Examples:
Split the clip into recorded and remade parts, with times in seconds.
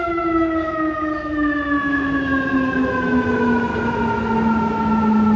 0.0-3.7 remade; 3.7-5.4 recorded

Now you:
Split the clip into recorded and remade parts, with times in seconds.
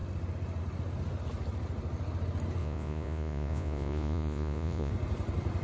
0.0-2.6 recorded; 2.6-4.9 remade; 4.9-5.6 recorded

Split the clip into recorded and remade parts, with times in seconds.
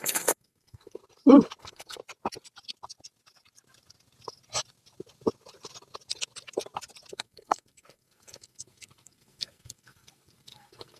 0.0-1.0 remade; 1.0-1.6 recorded; 1.6-2.0 remade; 2.0-7.1 recorded; 7.1-11.0 remade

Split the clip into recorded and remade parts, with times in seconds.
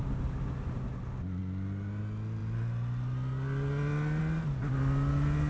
0.0-5.5 recorded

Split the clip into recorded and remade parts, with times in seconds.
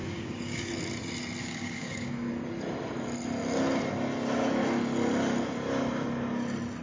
0.0-0.7 remade; 0.7-1.4 recorded; 1.4-2.3 remade; 2.3-6.8 recorded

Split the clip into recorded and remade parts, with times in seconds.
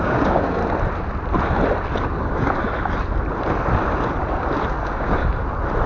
0.0-0.6 remade; 0.6-2.2 recorded; 2.2-2.6 remade; 2.6-4.8 recorded; 4.8-5.2 remade; 5.2-5.9 recorded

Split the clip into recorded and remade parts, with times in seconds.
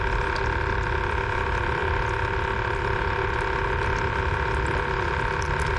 0.0-5.8 recorded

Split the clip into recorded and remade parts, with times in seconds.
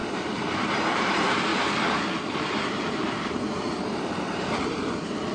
0.0-5.3 remade